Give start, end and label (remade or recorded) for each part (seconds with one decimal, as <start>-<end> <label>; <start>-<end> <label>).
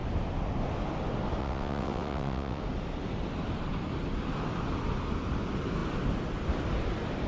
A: 0.0-1.4 recorded; 1.4-2.6 remade; 2.6-7.3 recorded